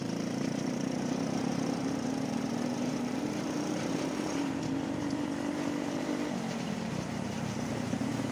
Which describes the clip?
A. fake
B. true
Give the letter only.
A